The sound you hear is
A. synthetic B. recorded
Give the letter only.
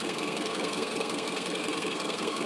A